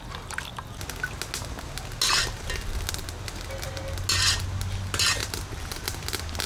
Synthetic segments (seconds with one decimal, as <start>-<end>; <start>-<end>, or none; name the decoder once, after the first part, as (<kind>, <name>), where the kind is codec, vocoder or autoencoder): 5.2-6.0 (vocoder, BigVGAN v2)